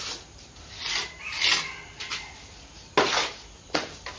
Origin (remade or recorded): recorded